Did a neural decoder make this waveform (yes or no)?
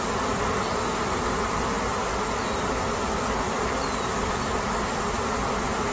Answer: no